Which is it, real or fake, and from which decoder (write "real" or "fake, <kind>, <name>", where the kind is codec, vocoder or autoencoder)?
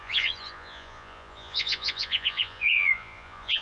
fake, vocoder, Vocos